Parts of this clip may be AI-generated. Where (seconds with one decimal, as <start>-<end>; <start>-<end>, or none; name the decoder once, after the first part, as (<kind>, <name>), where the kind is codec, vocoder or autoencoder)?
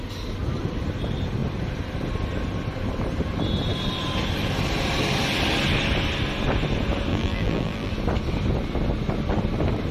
7.1-7.9 (vocoder, BigVGAN v2)